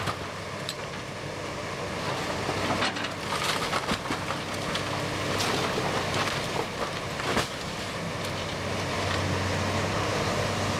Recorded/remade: recorded